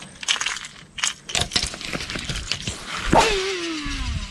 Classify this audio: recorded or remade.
recorded